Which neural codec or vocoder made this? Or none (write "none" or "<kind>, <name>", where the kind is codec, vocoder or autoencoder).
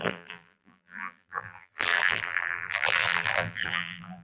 vocoder, BigVGAN v2